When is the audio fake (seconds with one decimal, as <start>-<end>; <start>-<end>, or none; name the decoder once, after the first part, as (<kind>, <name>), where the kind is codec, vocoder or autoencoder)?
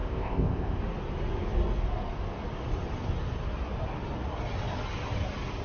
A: 0.0-0.8 (codec, ZipCodec)